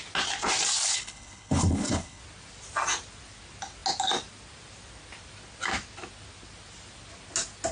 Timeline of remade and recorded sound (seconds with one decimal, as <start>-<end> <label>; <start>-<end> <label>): 0.0-0.9 recorded; 0.9-2.2 remade; 2.2-7.7 recorded